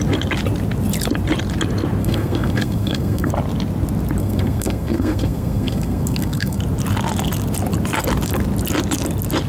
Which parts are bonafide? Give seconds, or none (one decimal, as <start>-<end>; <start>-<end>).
0.0-2.0; 3.3-4.2; 6.6-9.5